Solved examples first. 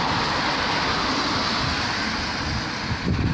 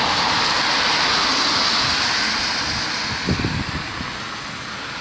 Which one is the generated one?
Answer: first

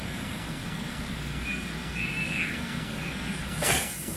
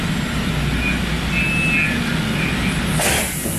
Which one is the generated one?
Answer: first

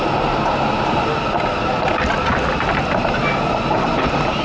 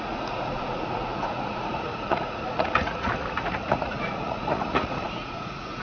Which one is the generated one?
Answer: second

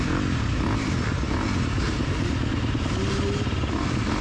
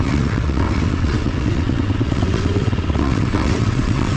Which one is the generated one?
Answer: second